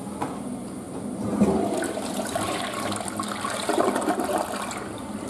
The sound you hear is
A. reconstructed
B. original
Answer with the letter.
B